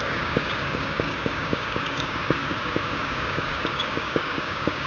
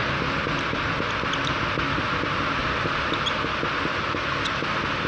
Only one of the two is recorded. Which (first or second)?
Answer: second